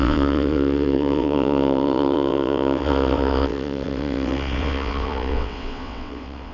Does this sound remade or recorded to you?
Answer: remade